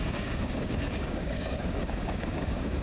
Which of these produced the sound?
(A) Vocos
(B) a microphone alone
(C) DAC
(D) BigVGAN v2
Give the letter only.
C